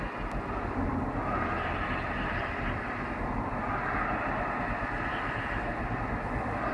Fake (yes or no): no